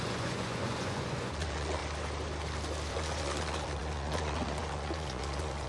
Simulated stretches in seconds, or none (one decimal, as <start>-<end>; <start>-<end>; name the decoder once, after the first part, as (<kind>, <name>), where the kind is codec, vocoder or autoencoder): 0.0-1.8 (vocoder, Vocos); 2.9-5.7